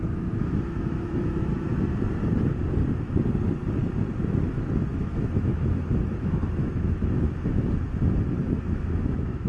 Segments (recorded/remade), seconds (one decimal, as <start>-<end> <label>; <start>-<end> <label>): 0.0-1.7 remade; 1.7-4.9 recorded; 4.9-7.5 remade; 7.5-8.4 recorded; 8.4-9.5 remade